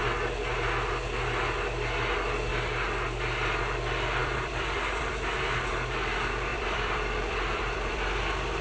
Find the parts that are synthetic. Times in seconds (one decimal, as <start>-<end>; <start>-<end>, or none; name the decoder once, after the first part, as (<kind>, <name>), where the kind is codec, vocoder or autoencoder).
4.2-5.7 (vocoder, BigVGAN v2); 6.5-8.2